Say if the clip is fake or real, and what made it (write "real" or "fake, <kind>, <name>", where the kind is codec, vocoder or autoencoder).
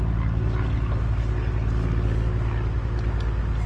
real